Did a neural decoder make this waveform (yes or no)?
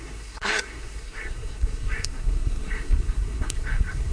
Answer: yes